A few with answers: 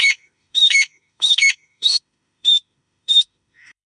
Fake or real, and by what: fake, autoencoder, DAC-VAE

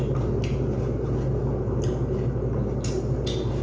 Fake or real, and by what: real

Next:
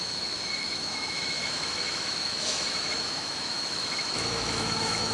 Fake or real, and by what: fake, autoencoder, DAC-VAE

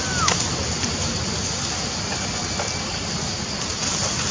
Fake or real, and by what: real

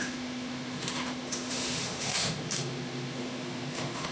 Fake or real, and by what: fake, autoencoder, DAC-VAE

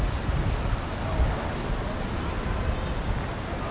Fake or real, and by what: real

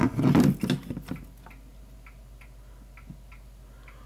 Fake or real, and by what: real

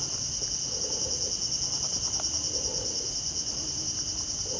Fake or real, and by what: real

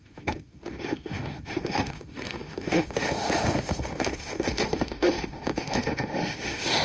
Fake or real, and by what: fake, autoencoder, DAC-VAE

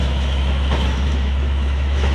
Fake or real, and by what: fake, autoencoder, DAC-VAE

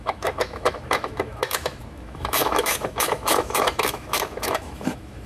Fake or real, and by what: fake, autoencoder, DAC-VAE